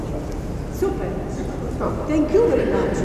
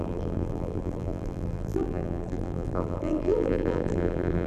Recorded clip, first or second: first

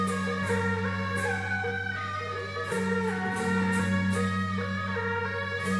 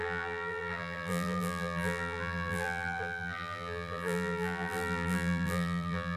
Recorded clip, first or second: first